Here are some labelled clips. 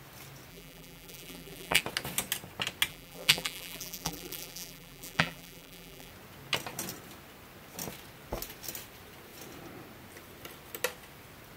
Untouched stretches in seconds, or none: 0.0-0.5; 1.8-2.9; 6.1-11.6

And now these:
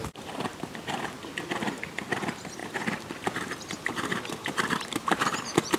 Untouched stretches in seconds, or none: 0.0-2.6; 4.3-5.8

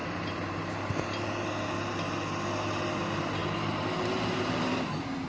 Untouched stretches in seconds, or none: 0.7-3.4

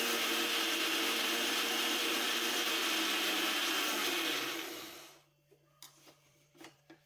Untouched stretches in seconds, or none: 4.5-5.9